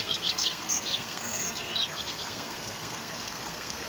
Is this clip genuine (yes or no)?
no